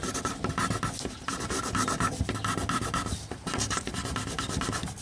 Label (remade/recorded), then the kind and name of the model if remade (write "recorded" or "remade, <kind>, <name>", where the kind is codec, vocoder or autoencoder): recorded